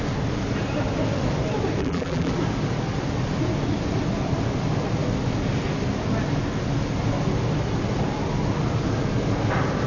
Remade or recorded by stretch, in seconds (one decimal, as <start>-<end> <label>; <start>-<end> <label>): 0.0-1.8 recorded; 1.8-2.3 remade; 2.3-9.9 recorded